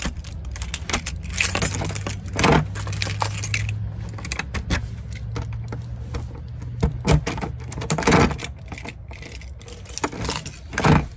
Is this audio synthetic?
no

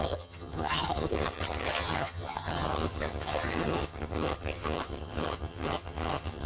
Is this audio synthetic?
yes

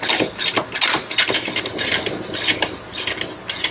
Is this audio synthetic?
no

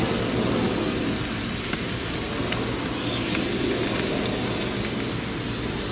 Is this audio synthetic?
no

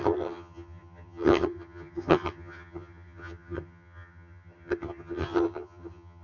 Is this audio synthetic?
yes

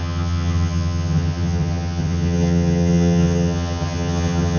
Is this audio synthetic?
yes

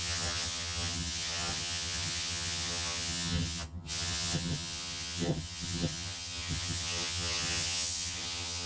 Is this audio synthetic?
yes